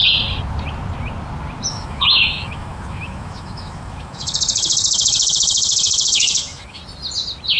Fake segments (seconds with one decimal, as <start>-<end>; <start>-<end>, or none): 1.7-6.8